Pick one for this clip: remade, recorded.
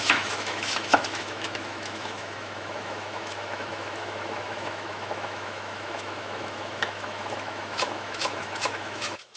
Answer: remade